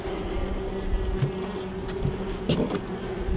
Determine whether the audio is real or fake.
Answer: real